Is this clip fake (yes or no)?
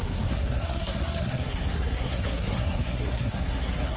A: yes